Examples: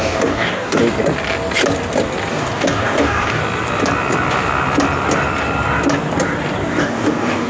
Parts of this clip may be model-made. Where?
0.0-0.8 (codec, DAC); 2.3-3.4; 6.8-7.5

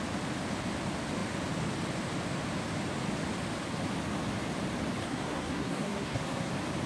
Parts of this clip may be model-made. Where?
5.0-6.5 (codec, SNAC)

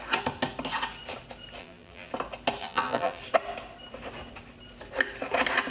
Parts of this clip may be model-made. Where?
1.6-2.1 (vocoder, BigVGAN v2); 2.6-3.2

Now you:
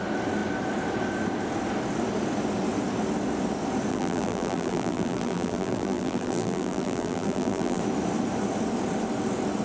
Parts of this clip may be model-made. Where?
3.9-7.8 (vocoder, BigVGAN v2)

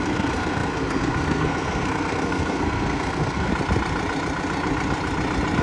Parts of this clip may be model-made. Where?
0.0-3.5 (codec, SNAC)